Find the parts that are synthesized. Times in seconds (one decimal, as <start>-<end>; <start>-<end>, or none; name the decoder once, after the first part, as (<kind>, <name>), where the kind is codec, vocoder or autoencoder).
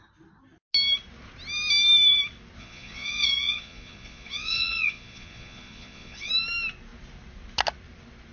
2.6-6.3 (vocoder, Vocos)